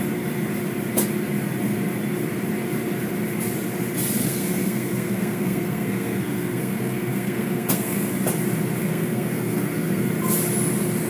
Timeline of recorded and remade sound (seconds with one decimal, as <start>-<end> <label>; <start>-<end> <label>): 0.0-4.2 recorded; 4.2-8.1 remade; 8.1-8.8 recorded; 8.8-10.1 remade; 10.1-11.1 recorded